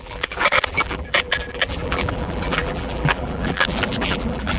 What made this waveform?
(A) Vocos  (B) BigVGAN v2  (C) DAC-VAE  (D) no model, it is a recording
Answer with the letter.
B